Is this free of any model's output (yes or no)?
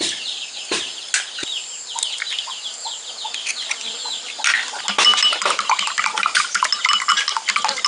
yes